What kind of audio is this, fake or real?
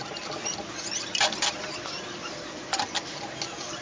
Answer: real